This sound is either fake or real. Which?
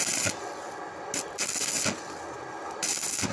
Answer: real